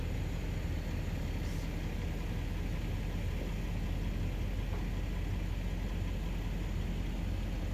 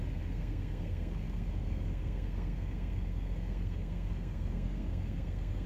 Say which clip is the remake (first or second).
second